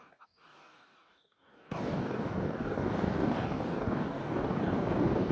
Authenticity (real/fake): fake